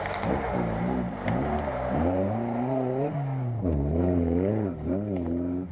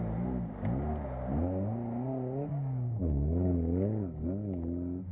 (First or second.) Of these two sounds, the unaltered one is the second